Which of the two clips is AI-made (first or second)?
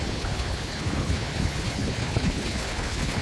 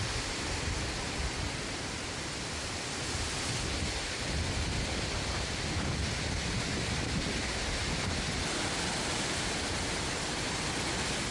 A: first